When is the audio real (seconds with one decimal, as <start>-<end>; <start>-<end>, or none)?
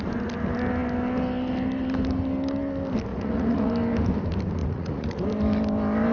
0.0-3.1; 3.7-4.6; 5.2-6.1